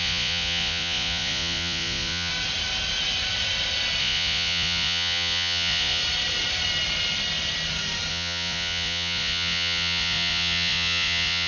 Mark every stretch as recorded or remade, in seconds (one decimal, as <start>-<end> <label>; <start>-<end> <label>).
0.0-2.3 remade; 2.3-4.0 recorded; 4.0-6.0 remade; 6.0-8.1 recorded; 8.1-11.5 remade